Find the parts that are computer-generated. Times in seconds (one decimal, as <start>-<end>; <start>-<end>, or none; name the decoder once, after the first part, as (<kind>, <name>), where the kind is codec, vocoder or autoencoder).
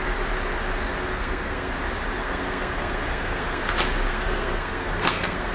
1.1-1.7 (codec, SNAC); 2.2-3.6; 4.1-5.5